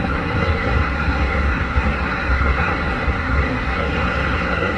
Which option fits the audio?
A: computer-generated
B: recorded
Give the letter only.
A